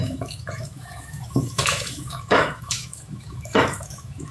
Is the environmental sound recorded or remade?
remade